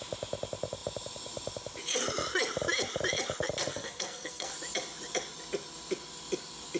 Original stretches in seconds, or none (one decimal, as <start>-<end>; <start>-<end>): 0.0-3.6; 4.5-6.8